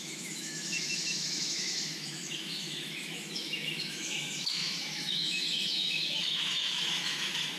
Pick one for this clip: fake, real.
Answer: fake